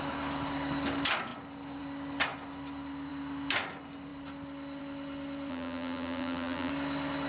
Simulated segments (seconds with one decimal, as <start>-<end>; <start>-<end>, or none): 5.5-6.7